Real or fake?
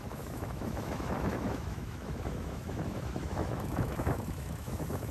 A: fake